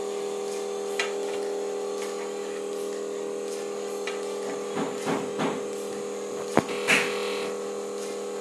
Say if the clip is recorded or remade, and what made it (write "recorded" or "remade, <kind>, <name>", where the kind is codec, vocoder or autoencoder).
recorded